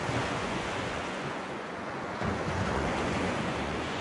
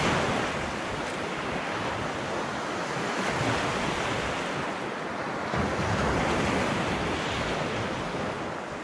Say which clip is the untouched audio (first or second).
second